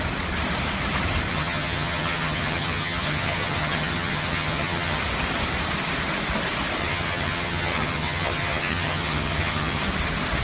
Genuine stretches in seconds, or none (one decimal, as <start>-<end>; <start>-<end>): 0.0-1.3; 5.0-6.8; 9.8-10.4